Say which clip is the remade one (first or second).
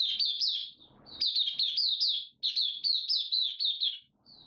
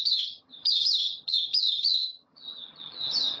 second